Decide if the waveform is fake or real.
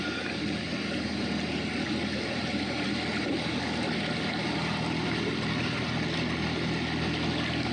real